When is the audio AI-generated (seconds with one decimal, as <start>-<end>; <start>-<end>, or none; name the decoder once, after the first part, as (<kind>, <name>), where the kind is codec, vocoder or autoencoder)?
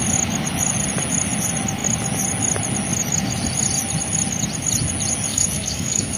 5.3-6.2 (codec, DAC)